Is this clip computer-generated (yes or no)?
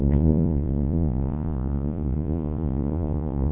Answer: yes